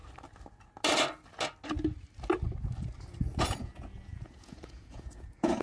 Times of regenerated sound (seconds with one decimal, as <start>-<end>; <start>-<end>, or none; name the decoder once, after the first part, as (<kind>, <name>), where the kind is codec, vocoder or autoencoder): 3.4-5.6 (vocoder, Vocos)